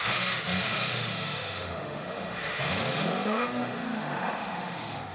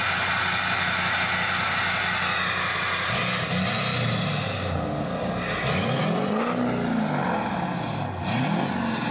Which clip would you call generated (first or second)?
first